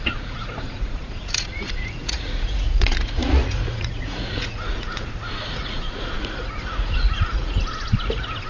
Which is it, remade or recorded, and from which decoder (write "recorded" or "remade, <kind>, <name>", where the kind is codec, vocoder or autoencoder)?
remade, vocoder, Vocos